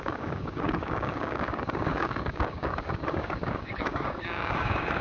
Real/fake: fake